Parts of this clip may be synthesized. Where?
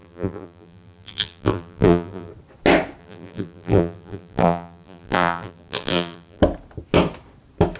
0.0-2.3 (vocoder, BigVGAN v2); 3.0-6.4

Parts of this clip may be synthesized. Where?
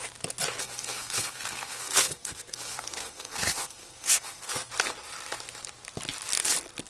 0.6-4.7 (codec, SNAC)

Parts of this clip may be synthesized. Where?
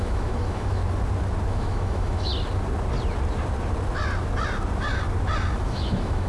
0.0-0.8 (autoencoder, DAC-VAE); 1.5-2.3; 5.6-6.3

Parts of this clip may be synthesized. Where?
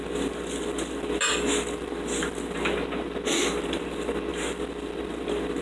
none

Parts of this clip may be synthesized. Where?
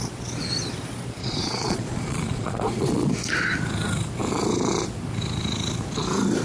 1.2-3.1 (vocoder, Vocos)